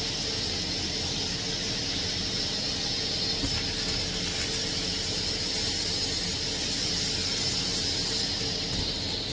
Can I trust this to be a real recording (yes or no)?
yes